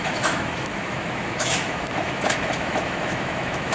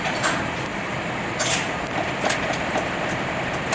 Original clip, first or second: second